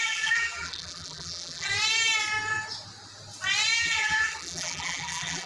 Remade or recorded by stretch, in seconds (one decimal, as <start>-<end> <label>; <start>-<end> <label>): 0.0-1.7 remade; 1.7-3.8 recorded; 3.8-5.5 remade